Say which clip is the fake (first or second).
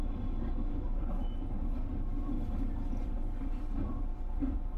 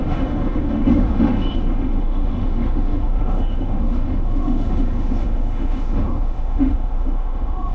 second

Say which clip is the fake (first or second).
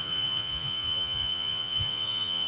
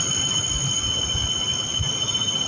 first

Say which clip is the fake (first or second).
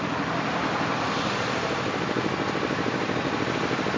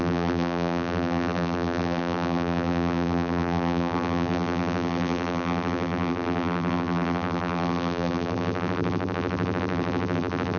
second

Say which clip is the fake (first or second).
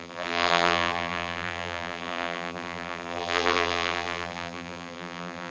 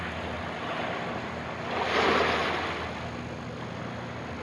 first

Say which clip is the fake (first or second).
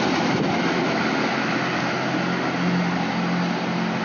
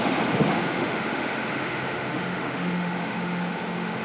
second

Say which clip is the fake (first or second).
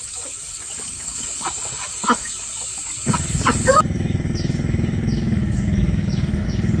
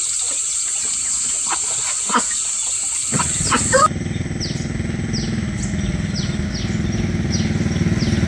first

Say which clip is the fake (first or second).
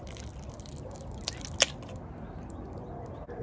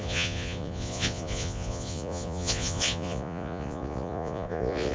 second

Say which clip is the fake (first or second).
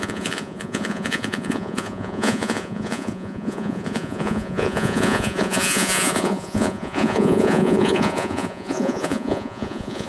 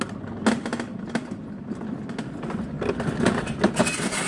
first